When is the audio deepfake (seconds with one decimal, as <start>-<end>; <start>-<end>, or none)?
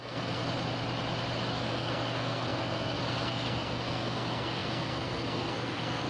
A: 0.0-0.4; 1.5-6.1